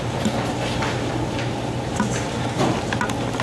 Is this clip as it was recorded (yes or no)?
yes